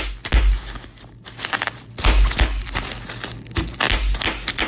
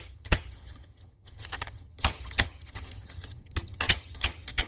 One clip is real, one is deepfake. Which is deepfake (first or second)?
second